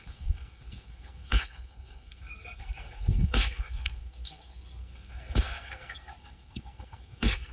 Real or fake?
fake